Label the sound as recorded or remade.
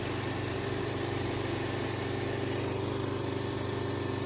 remade